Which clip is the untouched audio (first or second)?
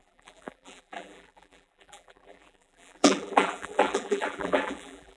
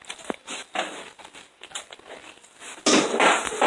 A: second